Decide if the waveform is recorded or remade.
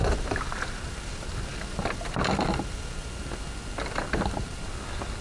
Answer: recorded